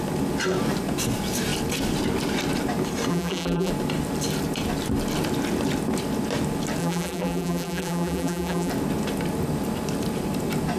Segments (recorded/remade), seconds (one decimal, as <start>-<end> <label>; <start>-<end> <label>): 0.0-3.1 recorded; 3.1-3.7 remade; 3.7-6.8 recorded; 6.8-8.7 remade; 8.7-10.8 recorded